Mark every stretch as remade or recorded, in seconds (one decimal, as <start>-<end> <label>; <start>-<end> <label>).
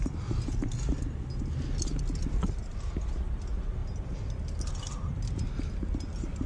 0.0-6.5 recorded